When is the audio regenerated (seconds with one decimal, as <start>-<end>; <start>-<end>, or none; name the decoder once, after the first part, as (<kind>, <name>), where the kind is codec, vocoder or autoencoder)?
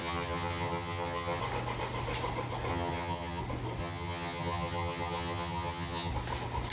0.0-1.4 (vocoder, HiFi-GAN); 2.7-3.4; 3.8-6.1